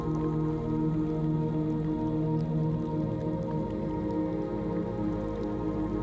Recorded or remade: recorded